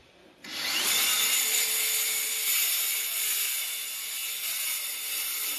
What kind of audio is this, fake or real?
real